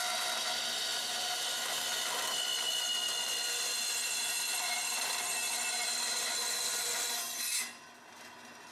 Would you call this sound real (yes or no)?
yes